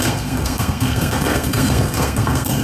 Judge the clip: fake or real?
fake